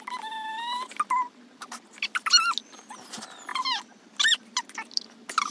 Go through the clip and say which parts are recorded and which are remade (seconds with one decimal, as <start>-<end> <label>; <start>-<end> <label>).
0.0-5.5 recorded